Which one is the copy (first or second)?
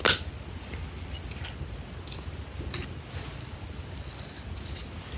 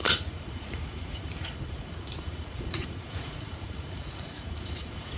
second